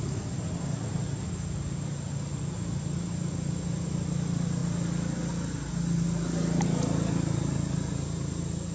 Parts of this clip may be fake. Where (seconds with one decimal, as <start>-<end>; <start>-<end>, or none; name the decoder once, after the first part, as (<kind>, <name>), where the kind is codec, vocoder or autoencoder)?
none